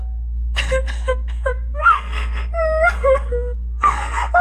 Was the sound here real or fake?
fake